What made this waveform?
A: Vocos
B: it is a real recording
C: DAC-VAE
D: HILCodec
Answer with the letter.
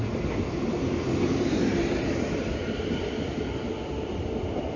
B